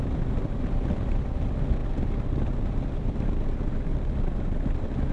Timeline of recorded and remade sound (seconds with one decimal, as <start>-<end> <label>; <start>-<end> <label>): 0.0-5.1 recorded

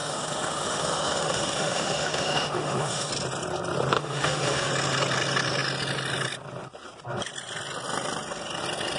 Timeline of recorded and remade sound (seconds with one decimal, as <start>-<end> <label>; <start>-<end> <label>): 0.0-3.1 remade; 3.1-4.0 recorded; 4.0-4.7 remade; 4.7-9.0 recorded